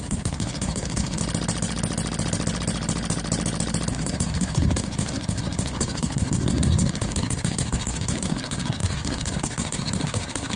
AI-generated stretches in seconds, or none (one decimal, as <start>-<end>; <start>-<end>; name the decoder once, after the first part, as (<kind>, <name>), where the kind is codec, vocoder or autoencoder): 0.0-1.2 (codec, SNAC); 3.9-10.6